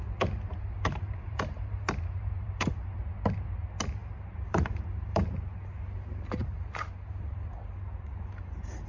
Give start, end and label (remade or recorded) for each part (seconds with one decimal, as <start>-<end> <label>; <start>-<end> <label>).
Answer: 0.0-0.5 recorded; 0.5-3.0 remade; 3.0-4.0 recorded; 4.0-5.2 remade; 5.2-6.4 recorded; 6.4-8.9 remade